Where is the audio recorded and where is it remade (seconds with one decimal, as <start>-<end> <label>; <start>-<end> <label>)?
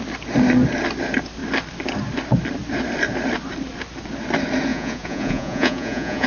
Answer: 0.0-4.7 recorded; 4.7-6.3 remade